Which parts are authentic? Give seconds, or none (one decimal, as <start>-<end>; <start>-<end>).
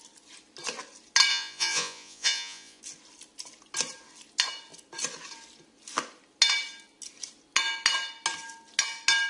0.0-1.3; 2.8-9.3